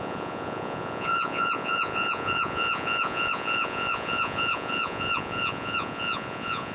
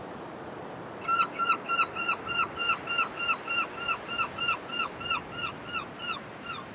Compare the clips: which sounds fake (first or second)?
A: first